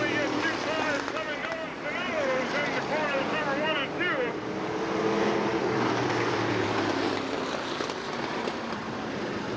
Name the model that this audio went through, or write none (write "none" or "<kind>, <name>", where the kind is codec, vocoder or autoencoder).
vocoder, BigVGAN v2